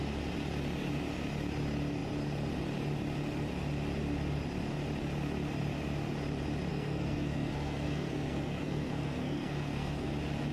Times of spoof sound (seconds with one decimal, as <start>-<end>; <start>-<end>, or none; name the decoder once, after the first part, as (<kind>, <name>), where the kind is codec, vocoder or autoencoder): 6.7-10.1 (codec, SNAC)